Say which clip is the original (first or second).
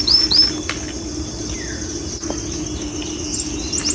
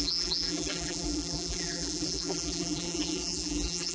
first